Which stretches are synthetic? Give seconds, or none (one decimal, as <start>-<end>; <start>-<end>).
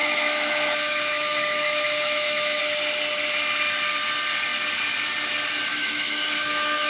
0.0-2.6; 5.7-6.9